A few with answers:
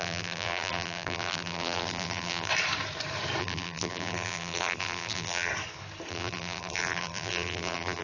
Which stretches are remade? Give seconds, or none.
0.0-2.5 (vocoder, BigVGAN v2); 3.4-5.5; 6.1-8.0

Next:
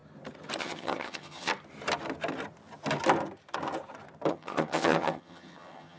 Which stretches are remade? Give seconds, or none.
0.6-1.5 (vocoder, HiFi-GAN); 4.3-6.0

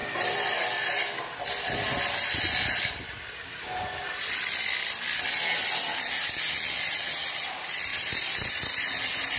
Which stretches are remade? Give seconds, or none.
0.0-0.6 (vocoder, BigVGAN v2)

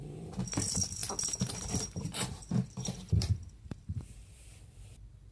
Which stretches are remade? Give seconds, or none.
0.0-1.0 (vocoder, BigVGAN v2); 1.6-2.5; 3.1-5.3